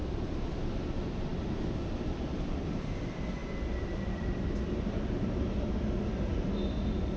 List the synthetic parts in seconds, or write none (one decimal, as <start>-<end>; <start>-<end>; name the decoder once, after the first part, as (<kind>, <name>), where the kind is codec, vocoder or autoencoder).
none